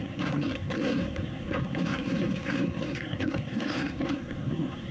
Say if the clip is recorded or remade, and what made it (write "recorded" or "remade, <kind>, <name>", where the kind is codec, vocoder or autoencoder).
remade, codec, SNAC